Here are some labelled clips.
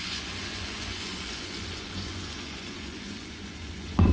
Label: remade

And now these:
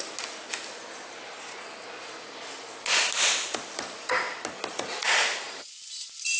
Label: recorded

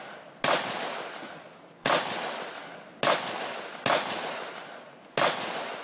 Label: recorded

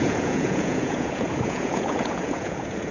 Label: remade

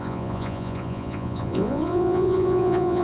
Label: remade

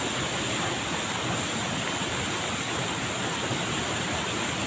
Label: recorded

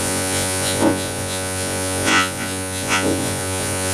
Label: remade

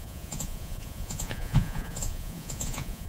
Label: remade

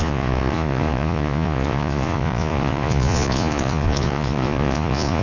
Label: remade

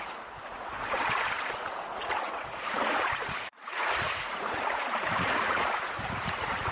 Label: remade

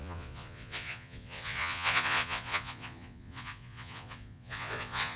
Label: remade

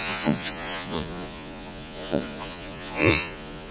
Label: remade